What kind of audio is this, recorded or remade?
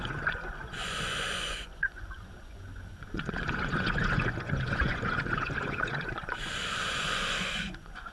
remade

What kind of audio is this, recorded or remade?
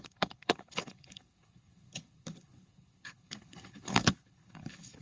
remade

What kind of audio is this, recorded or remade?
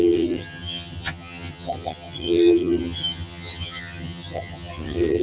remade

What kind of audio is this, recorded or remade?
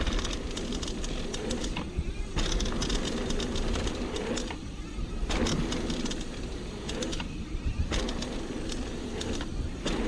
recorded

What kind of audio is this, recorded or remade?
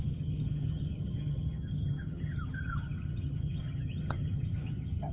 remade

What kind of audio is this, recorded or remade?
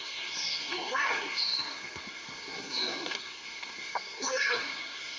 remade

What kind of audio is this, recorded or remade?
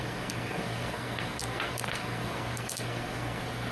remade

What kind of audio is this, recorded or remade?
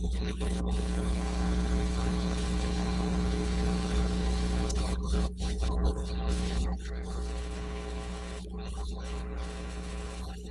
remade